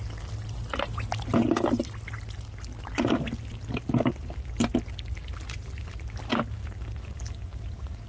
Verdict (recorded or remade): recorded